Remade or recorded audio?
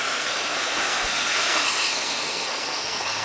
remade